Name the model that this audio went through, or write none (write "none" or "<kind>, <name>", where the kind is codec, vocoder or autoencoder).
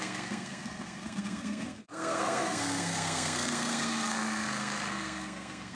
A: codec, SNAC